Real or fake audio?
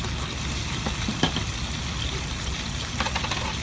real